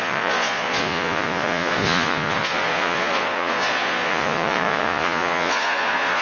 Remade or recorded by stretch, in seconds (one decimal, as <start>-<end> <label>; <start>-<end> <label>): 0.0-6.2 remade